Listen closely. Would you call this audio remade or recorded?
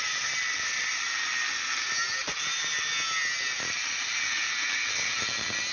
recorded